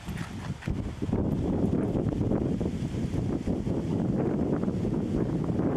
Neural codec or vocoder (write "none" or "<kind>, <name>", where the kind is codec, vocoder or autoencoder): none